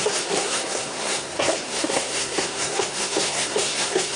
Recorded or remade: remade